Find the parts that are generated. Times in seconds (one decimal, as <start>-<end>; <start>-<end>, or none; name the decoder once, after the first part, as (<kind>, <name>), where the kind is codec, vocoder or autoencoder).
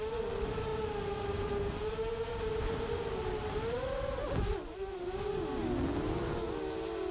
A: none